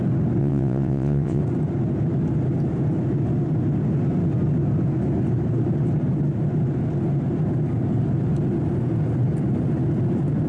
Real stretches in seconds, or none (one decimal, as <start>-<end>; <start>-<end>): 0.0-0.4; 1.4-10.5